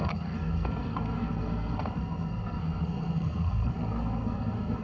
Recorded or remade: remade